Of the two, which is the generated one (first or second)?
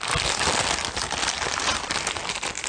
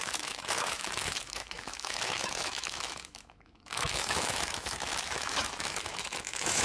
second